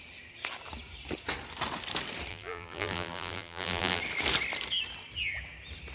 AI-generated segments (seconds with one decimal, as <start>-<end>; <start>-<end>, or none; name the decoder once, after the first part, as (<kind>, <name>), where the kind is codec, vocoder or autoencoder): 2.3-4.0 (vocoder, BigVGAN v2)